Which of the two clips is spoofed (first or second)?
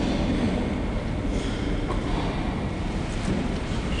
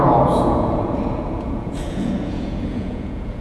second